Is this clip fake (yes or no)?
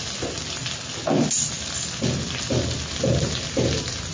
no